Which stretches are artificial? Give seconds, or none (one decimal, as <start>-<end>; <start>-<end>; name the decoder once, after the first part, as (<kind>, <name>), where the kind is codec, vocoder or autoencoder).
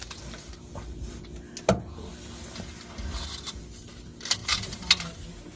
none